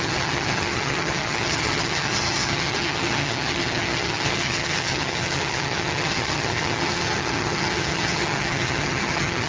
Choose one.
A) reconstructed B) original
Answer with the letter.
A